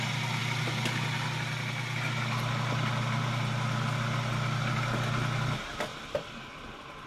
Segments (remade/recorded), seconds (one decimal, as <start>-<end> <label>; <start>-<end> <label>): 0.0-5.9 recorded; 5.9-6.5 remade; 6.5-7.1 recorded